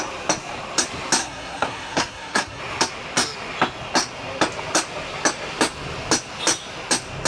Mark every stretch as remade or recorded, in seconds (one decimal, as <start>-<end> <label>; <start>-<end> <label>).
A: 0.0-1.2 recorded; 1.2-2.6 remade; 2.6-7.3 recorded